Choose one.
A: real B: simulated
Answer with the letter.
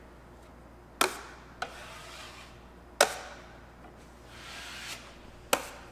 A